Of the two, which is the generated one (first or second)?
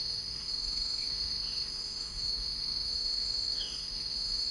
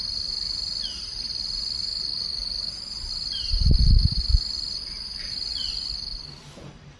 first